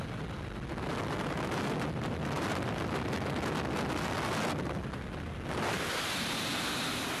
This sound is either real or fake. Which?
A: real